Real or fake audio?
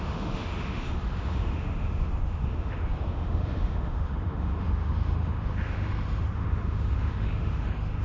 fake